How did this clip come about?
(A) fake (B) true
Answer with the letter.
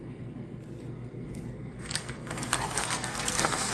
A